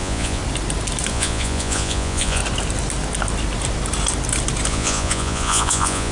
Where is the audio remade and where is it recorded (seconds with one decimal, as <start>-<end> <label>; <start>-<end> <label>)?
0.0-0.4 remade; 0.4-1.1 recorded; 1.1-2.4 remade; 2.4-4.7 recorded; 4.7-6.1 remade

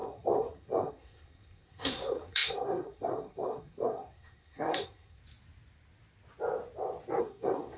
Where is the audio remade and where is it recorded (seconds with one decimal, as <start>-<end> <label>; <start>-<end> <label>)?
0.0-5.2 remade; 5.2-7.2 recorded; 7.2-7.8 remade

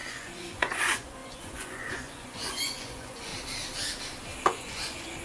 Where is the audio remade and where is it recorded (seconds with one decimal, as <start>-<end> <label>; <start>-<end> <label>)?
0.0-3.3 remade; 3.3-4.4 recorded; 4.4-5.2 remade

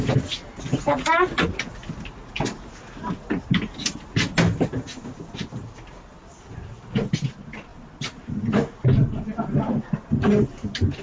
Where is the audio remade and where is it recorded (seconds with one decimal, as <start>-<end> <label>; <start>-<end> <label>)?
0.0-11.0 recorded

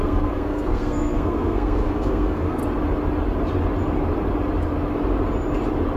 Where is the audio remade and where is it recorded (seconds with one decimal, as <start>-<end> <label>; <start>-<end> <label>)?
0.0-2.6 remade; 2.6-6.0 recorded